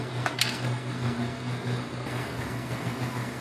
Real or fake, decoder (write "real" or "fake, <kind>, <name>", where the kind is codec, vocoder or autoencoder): fake, codec, SNAC